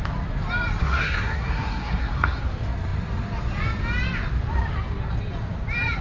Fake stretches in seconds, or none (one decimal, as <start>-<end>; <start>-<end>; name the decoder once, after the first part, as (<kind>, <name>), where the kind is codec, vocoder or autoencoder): 0.8-2.5 (codec, SNAC)